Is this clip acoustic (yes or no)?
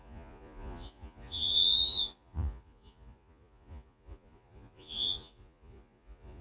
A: no